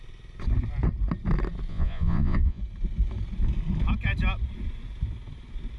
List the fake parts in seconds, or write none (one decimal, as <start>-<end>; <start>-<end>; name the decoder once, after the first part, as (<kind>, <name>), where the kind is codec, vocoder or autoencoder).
1.7-2.6 (vocoder, Vocos)